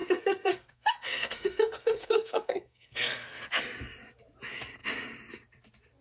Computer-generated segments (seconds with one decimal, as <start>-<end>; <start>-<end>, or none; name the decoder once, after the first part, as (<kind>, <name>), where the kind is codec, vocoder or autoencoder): 0.0-3.6 (codec, SNAC)